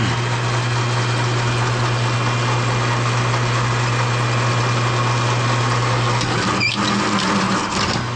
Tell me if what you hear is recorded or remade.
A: recorded